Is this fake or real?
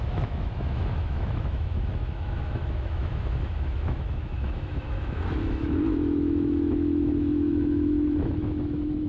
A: fake